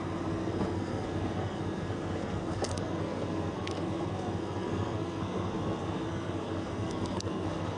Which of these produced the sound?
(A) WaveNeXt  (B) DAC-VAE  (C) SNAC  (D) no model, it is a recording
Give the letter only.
C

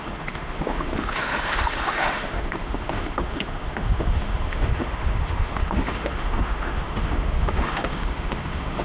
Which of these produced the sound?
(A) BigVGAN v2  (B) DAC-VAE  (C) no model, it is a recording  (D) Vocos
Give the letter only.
B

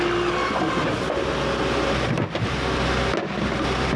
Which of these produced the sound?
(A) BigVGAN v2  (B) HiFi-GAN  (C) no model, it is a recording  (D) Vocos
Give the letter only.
C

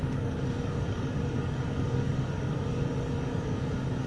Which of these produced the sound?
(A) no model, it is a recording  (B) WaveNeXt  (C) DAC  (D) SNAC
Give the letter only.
C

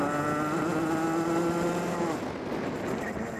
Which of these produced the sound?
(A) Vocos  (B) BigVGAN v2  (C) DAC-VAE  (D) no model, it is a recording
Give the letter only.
D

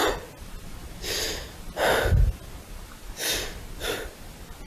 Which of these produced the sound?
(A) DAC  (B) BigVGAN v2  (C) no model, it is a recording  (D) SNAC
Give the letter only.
C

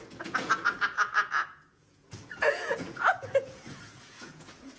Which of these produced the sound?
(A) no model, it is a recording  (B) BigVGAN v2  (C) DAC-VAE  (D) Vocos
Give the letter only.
D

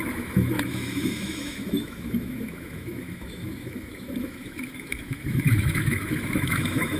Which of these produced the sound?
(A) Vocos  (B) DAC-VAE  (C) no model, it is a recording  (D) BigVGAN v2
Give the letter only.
B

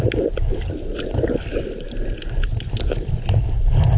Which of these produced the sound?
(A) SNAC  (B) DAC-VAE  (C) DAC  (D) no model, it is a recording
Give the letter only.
D